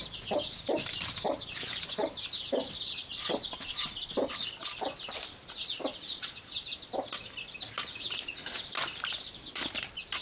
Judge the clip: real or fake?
real